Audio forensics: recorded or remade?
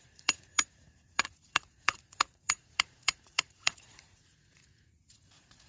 remade